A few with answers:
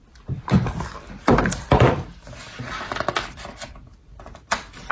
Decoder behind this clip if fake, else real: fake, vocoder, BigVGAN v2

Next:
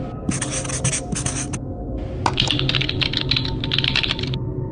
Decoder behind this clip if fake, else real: real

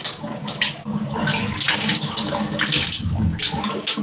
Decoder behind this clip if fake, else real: fake, codec, DAC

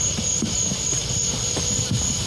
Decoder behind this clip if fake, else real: real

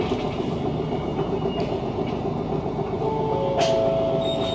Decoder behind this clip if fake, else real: real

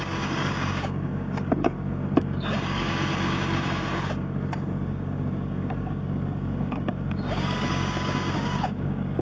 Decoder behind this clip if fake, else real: fake, codec, DAC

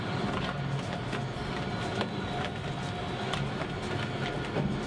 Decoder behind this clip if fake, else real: real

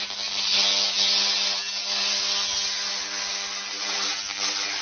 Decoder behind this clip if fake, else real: real